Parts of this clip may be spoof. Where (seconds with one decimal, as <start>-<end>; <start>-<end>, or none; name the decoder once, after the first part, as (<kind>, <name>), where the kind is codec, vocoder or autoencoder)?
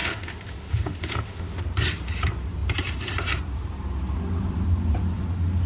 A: 0.0-1.6 (autoencoder, DAC-VAE)